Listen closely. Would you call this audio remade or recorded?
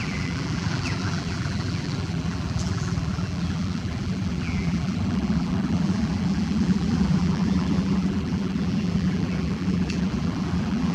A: remade